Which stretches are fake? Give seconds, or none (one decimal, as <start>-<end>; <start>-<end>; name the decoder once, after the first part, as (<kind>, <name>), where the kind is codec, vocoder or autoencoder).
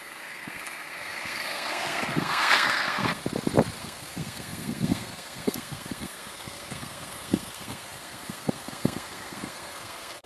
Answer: 0.0-3.2 (codec, SNAC); 3.8-10.3